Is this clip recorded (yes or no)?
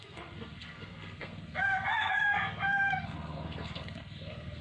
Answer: no